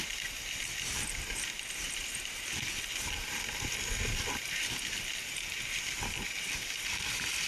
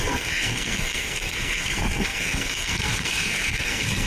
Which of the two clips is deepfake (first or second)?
second